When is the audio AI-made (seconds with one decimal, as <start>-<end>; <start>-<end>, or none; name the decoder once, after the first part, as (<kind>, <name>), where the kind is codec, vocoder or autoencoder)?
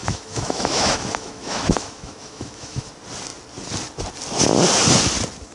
0.0-2.9 (autoencoder, DAC-VAE)